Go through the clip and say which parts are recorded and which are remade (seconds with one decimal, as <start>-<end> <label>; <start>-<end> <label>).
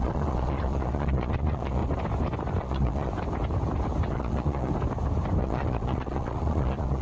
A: 0.0-1.8 remade; 1.8-2.6 recorded; 2.6-3.1 remade; 3.1-4.1 recorded; 4.1-4.7 remade; 4.7-5.4 recorded; 5.4-7.0 remade